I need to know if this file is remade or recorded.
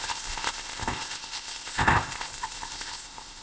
remade